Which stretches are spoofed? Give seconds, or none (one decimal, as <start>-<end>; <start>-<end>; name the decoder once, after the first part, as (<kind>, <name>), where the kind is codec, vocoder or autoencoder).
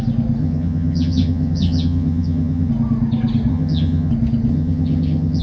0.4-2.7 (vocoder, HiFi-GAN); 3.5-4.1; 4.5-5.4